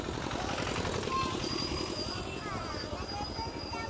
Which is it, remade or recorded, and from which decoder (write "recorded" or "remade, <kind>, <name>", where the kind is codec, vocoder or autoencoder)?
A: recorded